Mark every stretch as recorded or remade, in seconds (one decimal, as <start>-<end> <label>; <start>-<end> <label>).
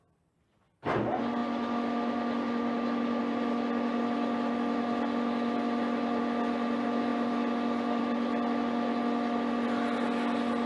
0.0-10.7 recorded